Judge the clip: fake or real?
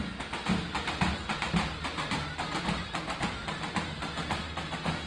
real